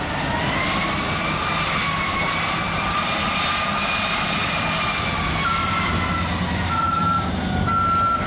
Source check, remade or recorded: recorded